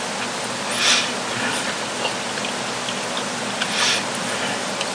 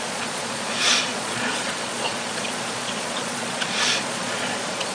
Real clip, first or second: first